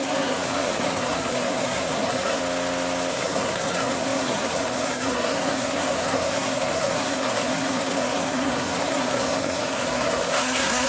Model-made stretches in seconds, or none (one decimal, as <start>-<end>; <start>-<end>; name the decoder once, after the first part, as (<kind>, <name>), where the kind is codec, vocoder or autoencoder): 0.0-2.4 (codec, SNAC); 3.1-10.9